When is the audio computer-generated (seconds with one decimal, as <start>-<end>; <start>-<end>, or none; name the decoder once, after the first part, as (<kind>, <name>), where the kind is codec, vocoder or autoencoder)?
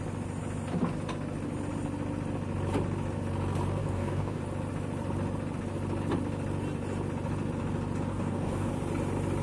3.8-4.4 (codec, DAC); 8.1-8.7